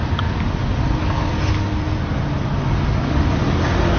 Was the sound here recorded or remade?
recorded